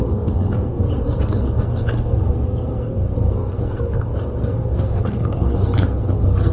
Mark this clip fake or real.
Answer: fake